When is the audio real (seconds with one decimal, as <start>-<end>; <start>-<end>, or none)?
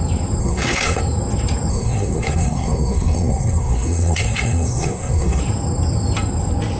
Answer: 0.0-0.4; 1.0-1.7; 5.4-6.8